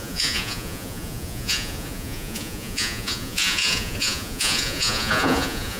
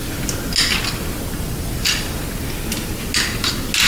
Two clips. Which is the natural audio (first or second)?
second